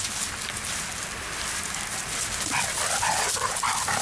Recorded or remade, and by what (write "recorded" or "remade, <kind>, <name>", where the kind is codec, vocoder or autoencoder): recorded